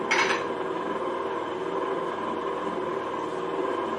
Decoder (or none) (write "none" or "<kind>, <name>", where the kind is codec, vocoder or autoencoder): none